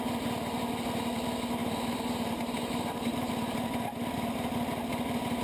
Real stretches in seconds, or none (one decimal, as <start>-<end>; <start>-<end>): 0.0-1.6; 3.3-5.4